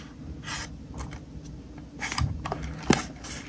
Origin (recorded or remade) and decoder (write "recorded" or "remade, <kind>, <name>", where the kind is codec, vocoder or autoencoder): recorded